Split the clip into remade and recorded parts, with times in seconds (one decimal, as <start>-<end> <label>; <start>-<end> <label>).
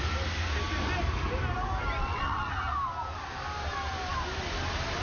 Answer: 0.0-2.0 recorded; 2.0-2.5 remade; 2.5-5.0 recorded